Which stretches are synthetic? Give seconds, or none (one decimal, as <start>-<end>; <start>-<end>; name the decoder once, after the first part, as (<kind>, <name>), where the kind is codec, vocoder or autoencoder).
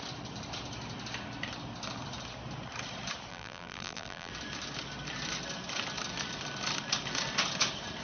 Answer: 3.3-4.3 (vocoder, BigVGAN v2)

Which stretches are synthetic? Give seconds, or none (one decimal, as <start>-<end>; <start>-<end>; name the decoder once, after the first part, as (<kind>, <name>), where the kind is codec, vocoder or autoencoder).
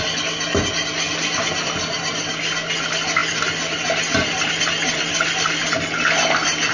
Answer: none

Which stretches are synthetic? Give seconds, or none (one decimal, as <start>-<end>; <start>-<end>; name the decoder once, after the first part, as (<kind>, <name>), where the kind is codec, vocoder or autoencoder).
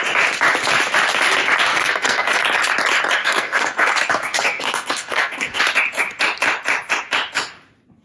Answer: 1.7-2.4 (codec, SNAC); 3.2-5.6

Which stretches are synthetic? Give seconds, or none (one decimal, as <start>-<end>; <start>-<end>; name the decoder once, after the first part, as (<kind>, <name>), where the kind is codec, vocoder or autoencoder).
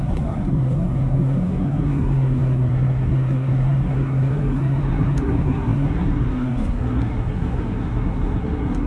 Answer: 0.0-8.9 (codec, SNAC)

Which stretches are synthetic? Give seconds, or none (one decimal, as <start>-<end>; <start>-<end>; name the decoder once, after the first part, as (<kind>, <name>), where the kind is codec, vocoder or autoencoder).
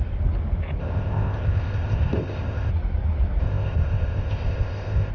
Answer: 0.8-2.7 (codec, ZipCodec); 3.4-5.1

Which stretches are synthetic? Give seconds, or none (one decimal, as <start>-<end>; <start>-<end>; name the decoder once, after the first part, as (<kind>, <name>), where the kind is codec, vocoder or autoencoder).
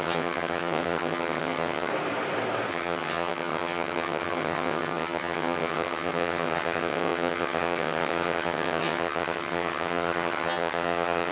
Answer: 0.0-1.9 (vocoder, HiFi-GAN); 2.7-11.3